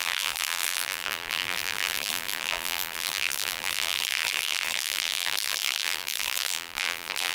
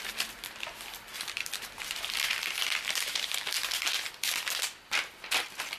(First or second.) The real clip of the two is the second